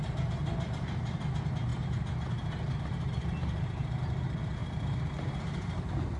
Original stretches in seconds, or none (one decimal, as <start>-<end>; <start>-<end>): none